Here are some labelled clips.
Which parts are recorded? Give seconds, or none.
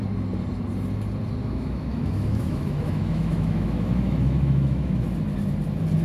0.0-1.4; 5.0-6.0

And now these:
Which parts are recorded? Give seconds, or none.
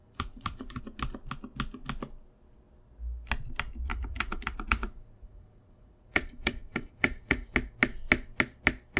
0.8-3.9; 7.5-9.0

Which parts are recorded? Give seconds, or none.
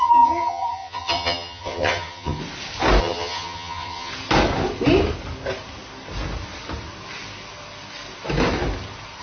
2.4-3.0; 4.1-9.2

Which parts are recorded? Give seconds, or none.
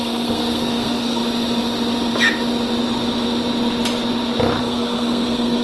1.2-4.6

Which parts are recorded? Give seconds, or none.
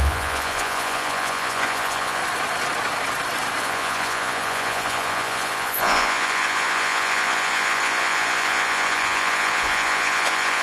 2.2-3.6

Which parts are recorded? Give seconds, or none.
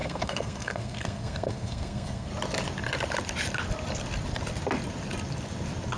2.3-6.0